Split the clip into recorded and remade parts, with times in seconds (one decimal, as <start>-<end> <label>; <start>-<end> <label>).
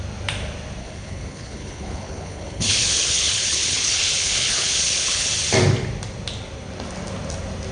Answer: 0.0-0.8 recorded; 0.8-5.3 remade; 5.3-7.7 recorded